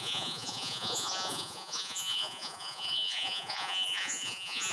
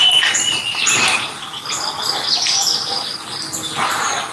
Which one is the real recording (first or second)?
second